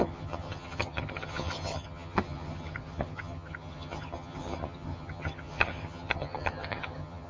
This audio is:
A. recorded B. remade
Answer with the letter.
B